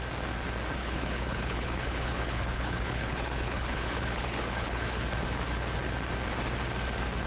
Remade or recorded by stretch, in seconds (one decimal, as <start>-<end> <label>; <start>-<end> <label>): 0.0-0.8 recorded; 0.8-5.0 remade; 5.0-7.3 recorded